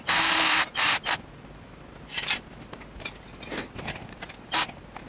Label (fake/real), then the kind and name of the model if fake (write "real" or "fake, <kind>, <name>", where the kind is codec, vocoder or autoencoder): real